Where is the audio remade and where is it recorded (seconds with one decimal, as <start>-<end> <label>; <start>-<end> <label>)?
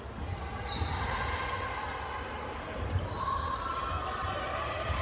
0.0-1.9 recorded; 1.9-5.0 remade